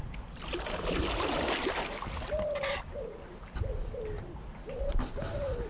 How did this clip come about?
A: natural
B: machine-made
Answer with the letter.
A